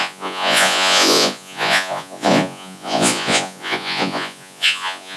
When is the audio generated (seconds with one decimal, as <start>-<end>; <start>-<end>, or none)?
0.0-5.2